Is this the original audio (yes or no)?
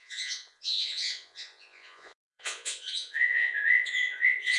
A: no